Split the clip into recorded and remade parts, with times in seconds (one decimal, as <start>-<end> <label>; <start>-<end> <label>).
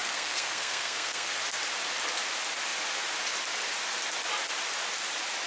0.0-1.4 remade; 1.4-5.5 recorded